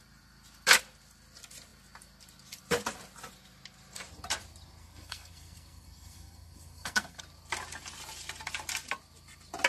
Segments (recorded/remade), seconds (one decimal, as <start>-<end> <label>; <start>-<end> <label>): 0.0-4.8 recorded; 4.8-7.2 remade; 7.2-9.7 recorded